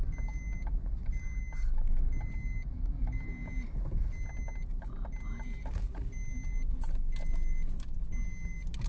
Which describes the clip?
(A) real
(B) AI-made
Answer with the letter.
A